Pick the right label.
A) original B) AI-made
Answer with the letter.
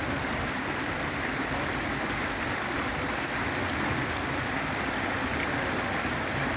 A